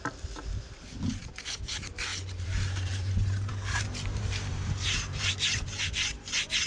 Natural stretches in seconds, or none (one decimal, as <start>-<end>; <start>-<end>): 0.0-2.1; 5.3-6.7